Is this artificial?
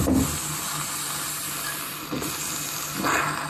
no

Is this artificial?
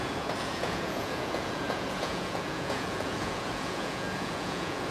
yes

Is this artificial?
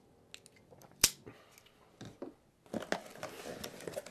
no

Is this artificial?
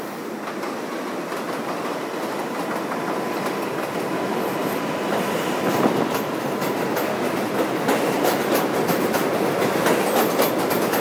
no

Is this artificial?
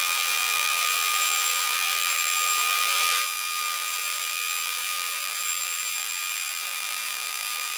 yes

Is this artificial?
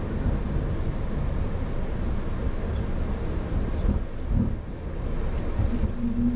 no